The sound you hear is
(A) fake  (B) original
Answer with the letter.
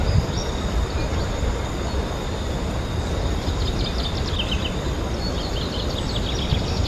B